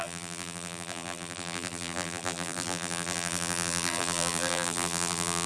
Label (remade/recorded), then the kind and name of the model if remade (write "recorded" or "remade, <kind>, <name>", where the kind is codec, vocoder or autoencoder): remade, vocoder, BigVGAN v2